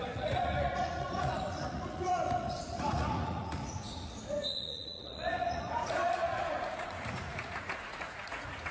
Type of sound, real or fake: fake